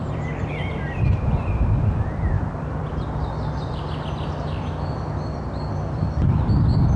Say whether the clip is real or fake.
fake